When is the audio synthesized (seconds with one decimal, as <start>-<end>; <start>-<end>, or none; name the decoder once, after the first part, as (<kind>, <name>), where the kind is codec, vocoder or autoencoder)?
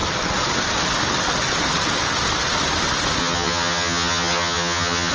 3.2-5.1 (vocoder, HiFi-GAN)